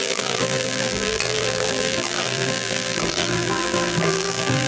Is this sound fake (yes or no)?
yes